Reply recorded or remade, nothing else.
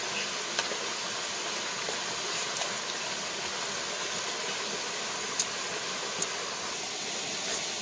recorded